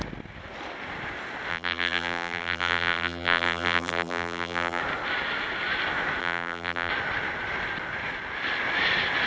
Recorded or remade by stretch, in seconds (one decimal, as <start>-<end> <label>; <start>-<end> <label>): 0.0-1.5 recorded; 1.5-4.8 remade; 4.8-6.2 recorded; 6.2-6.9 remade; 6.9-9.3 recorded